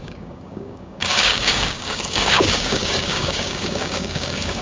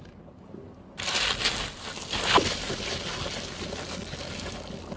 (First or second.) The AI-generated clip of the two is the first